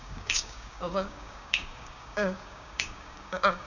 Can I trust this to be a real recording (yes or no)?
no